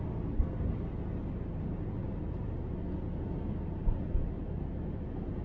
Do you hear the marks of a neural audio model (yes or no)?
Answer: no